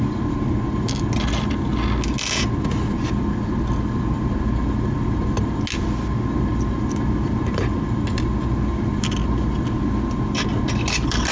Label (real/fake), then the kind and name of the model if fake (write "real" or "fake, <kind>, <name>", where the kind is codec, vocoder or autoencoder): real